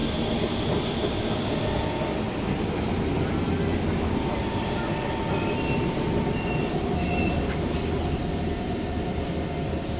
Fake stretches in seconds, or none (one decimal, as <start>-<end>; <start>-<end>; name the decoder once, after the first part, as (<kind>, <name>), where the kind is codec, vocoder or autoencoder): none

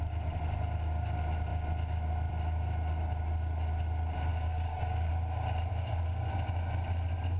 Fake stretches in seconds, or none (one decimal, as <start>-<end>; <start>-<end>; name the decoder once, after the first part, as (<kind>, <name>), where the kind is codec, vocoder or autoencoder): 4.3-5.1 (codec, DAC); 5.7-6.3

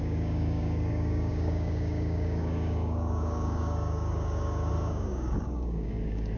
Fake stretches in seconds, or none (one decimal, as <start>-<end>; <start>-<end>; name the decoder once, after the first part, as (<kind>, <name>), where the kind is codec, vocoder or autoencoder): 0.0-6.4 (codec, DAC)

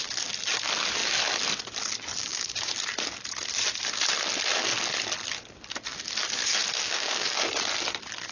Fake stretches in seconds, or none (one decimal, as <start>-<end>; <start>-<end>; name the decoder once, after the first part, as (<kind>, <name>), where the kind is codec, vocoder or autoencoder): 2.2-2.7 (codec, DAC); 6.8-7.4

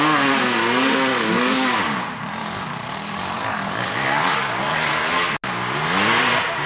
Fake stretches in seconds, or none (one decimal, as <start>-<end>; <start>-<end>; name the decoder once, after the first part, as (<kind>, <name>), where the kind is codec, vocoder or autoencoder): 1.1-1.8 (codec, DAC); 2.4-5.1

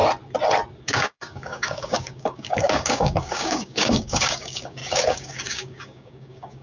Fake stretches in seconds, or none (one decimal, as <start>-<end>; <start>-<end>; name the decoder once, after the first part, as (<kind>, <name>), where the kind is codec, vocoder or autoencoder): 0.8-6.6 (codec, DAC)

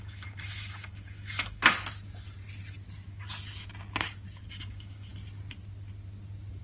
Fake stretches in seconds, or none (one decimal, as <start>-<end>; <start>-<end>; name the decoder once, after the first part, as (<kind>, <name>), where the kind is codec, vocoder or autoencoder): 0.0-1.6 (codec, DAC); 4.5-5.1